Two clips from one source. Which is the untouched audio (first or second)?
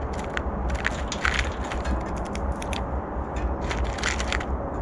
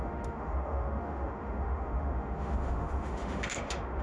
first